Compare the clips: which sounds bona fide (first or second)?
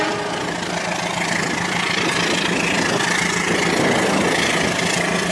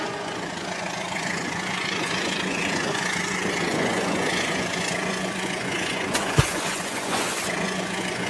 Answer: first